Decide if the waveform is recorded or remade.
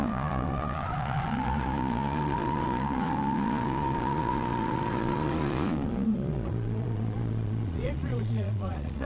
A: remade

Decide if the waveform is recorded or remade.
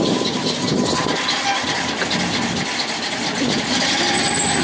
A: recorded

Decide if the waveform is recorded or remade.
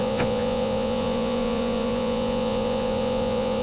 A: remade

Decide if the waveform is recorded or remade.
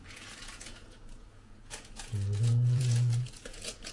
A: remade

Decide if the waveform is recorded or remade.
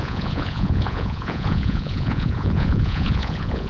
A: remade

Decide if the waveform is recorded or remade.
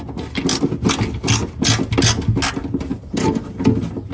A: recorded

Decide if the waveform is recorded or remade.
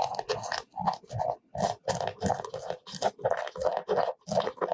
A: recorded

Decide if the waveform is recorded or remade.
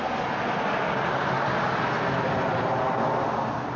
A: recorded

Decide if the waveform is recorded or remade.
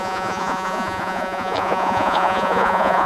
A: remade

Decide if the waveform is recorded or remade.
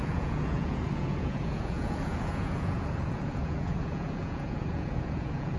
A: remade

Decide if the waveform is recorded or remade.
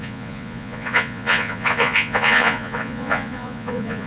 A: remade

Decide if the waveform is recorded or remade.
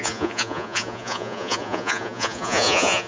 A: remade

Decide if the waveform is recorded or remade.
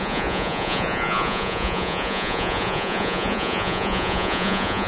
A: remade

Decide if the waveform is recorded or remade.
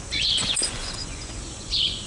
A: remade